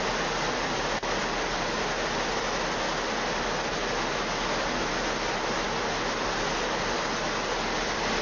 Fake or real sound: real